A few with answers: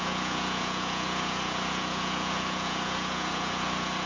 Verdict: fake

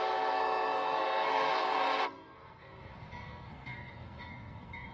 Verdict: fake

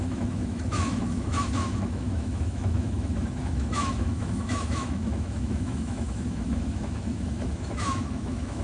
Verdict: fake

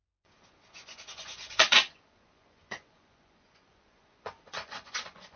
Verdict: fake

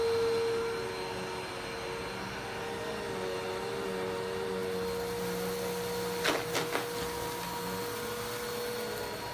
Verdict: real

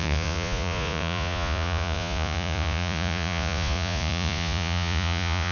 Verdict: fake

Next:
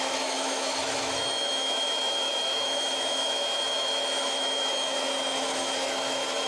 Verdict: fake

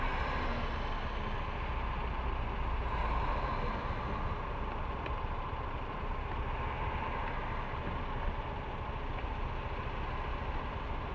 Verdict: real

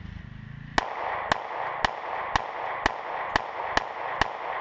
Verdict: real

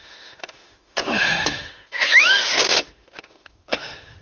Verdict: fake